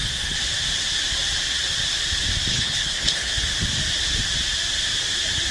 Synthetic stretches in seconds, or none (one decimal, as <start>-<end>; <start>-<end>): 2.5-3.3